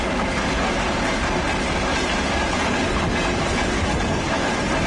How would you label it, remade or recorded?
recorded